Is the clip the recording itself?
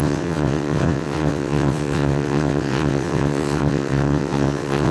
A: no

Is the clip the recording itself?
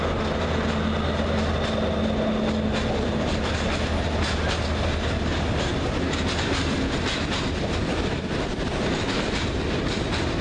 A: yes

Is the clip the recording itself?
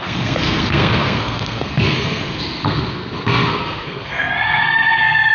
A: no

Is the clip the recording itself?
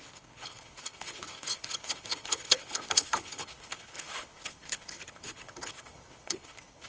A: no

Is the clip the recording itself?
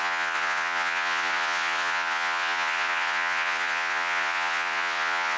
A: no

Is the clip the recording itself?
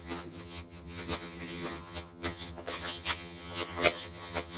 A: no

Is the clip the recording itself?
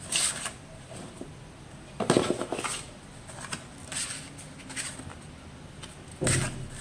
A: yes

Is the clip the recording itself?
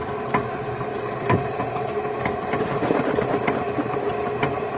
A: yes